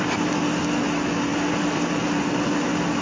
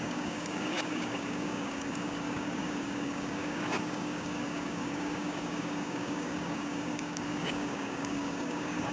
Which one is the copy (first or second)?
second